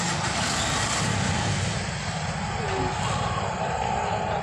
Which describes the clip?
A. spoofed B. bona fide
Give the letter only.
B